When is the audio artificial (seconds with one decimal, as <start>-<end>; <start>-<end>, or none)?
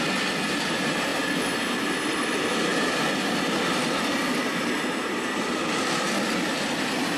none